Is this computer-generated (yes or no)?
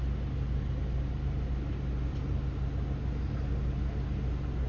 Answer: no